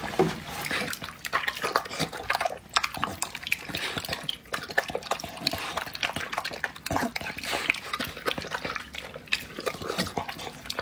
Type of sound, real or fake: real